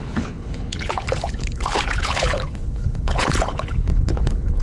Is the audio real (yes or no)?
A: no